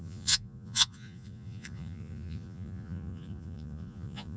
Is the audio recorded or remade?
remade